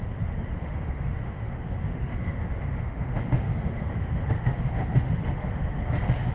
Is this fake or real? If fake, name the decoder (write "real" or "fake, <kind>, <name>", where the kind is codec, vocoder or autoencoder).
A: fake, autoencoder, DAC-VAE